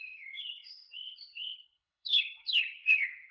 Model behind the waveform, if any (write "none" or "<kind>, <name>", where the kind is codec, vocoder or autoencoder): codec, HILCodec